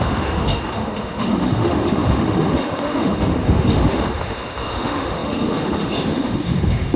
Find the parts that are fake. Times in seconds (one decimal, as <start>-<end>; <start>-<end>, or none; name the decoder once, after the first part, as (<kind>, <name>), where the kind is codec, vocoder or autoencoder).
0.0-7.0 (autoencoder, DAC-VAE)